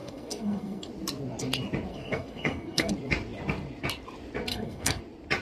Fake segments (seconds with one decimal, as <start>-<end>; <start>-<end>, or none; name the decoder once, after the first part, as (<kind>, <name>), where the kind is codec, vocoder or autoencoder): 0.0-0.9 (codec, SNAC); 1.9-2.9; 4.5-5.0